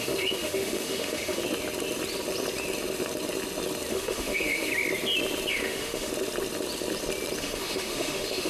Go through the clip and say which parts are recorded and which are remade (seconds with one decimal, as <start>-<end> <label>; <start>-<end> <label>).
0.0-1.4 remade; 1.4-3.9 recorded; 3.9-4.7 remade; 4.7-5.5 recorded; 5.5-6.1 remade; 6.1-7.4 recorded; 7.4-8.5 remade